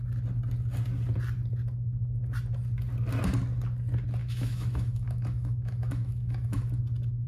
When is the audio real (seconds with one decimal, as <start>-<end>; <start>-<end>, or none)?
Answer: 0.0-4.2; 6.8-7.3